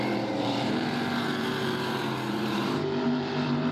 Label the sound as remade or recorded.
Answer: remade